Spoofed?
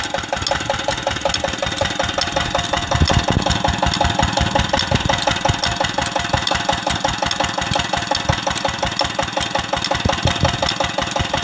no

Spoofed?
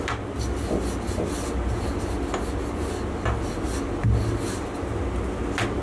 no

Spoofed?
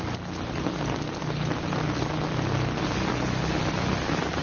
no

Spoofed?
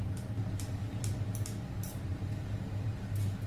no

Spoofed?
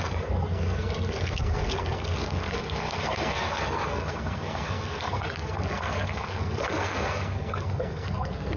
yes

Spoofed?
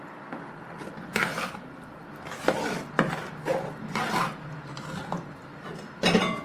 no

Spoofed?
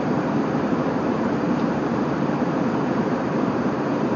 yes